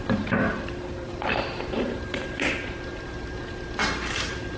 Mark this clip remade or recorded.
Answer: remade